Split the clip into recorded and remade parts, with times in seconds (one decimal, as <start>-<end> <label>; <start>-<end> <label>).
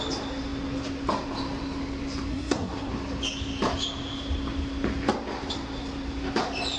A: 0.0-2.3 recorded; 2.3-2.9 remade; 2.9-6.8 recorded